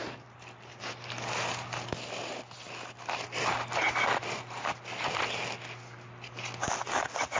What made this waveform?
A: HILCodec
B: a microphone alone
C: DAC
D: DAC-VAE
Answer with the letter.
B